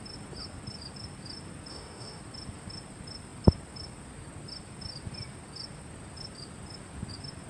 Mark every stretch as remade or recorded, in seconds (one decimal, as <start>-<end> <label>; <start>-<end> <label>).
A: 0.0-1.7 recorded; 1.7-2.2 remade; 2.2-7.5 recorded